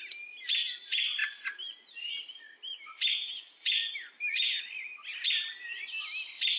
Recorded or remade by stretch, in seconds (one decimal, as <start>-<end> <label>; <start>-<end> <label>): 0.0-1.2 recorded; 1.2-4.6 remade; 4.6-6.6 recorded